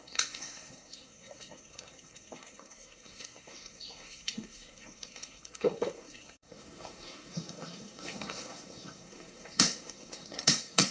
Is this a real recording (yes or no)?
no